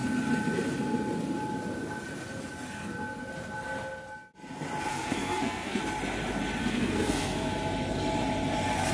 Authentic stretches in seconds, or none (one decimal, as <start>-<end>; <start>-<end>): 0.0-4.9; 5.8-6.6; 7.5-8.9